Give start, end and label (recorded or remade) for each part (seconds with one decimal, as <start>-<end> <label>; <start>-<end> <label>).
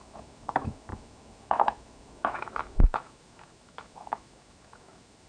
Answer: 0.0-5.3 remade